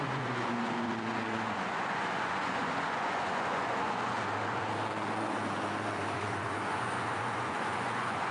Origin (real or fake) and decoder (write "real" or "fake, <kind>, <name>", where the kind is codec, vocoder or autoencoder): fake, vocoder, Vocos